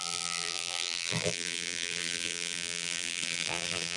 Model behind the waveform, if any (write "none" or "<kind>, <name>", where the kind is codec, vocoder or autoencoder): vocoder, BigVGAN v2